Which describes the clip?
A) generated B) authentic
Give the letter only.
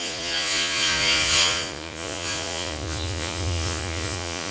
A